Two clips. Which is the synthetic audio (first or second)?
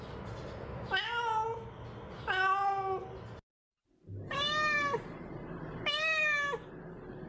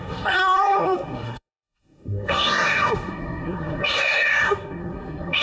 second